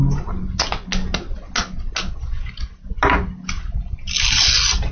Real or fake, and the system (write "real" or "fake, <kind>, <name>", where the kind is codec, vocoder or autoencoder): real